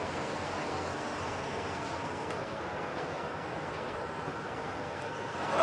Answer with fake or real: fake